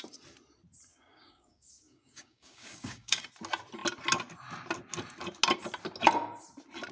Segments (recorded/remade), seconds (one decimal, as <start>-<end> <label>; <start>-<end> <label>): 0.0-0.9 recorded; 0.9-3.2 remade; 3.2-6.9 recorded